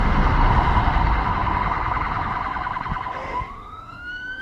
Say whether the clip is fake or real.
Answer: fake